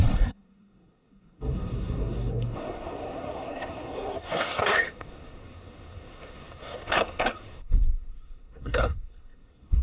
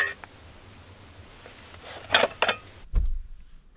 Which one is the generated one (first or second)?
first